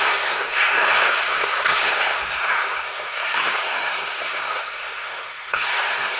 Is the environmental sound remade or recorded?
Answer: remade